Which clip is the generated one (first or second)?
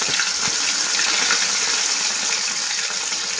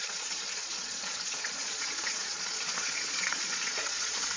second